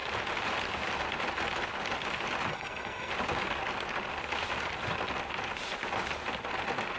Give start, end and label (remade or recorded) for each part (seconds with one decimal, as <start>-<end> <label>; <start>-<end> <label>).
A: 0.0-2.5 recorded; 2.5-3.1 remade; 3.1-7.0 recorded